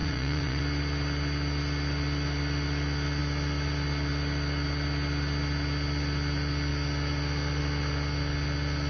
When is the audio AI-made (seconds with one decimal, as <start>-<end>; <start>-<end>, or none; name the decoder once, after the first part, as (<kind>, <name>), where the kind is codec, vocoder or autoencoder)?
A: 0.0-0.6 (vocoder, Vocos)